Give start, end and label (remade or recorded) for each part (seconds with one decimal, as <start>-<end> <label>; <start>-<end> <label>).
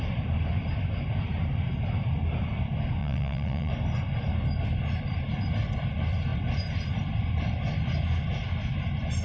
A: 0.0-3.0 recorded; 3.0-3.7 remade; 3.7-9.2 recorded